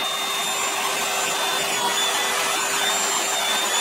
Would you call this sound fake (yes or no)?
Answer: no